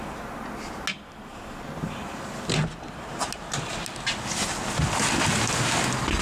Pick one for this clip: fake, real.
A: real